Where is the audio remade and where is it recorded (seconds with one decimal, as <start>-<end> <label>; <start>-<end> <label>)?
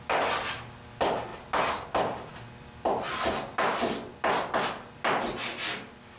0.0-6.2 recorded